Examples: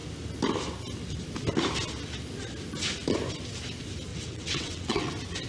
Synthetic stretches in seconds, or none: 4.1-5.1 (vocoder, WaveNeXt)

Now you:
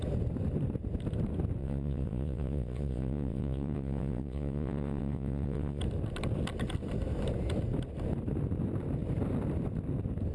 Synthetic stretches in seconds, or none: 1.6-5.8 (vocoder, WaveNeXt)

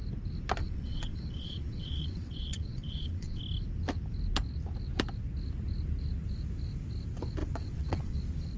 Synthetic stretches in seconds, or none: 0.6-3.4 (vocoder, WaveNeXt); 7.4-8.2